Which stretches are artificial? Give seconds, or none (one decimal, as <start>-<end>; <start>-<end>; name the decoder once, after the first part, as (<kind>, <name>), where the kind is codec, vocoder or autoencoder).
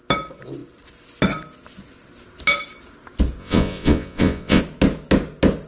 3.4-4.6 (vocoder, Vocos)